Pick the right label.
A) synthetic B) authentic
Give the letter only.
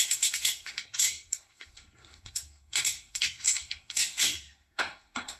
A